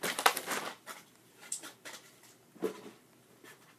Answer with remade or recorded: remade